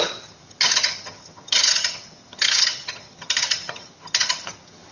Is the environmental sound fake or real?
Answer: fake